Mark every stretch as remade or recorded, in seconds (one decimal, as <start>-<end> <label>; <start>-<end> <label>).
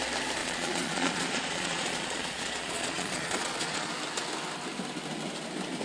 0.0-0.4 recorded; 0.4-3.9 remade; 3.9-5.8 recorded